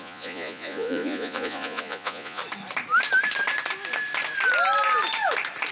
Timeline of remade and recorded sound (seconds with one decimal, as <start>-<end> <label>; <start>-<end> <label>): 0.0-2.4 remade; 2.4-5.7 recorded